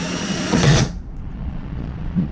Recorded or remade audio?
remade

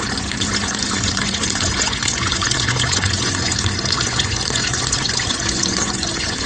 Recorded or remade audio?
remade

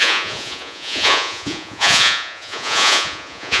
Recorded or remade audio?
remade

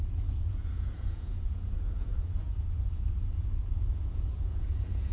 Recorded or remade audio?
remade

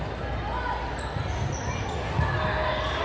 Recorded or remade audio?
recorded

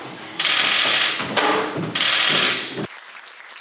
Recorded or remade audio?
recorded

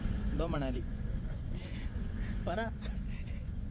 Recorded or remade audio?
remade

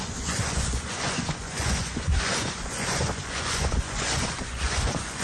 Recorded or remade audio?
remade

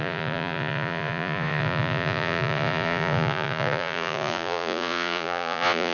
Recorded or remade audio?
remade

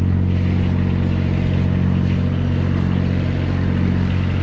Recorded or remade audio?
recorded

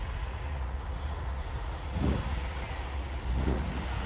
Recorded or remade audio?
remade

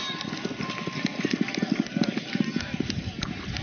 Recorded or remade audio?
recorded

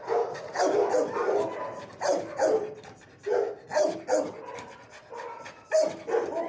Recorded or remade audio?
recorded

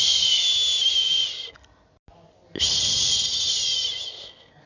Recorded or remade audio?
recorded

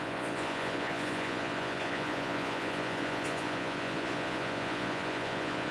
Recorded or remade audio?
remade